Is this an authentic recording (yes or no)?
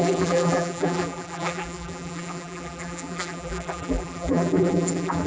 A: no